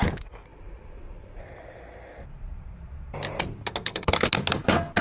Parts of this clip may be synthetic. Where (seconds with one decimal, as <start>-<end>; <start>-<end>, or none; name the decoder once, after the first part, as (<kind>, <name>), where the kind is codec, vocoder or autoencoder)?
3.8-4.4 (codec, SNAC)